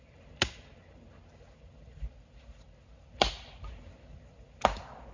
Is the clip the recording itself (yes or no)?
yes